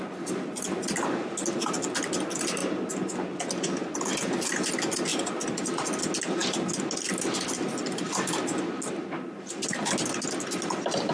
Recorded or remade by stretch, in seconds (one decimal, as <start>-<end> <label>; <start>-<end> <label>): 0.0-11.1 recorded